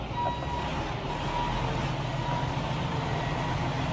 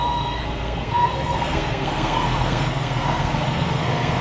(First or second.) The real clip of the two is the first